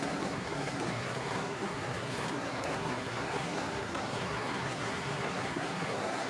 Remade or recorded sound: remade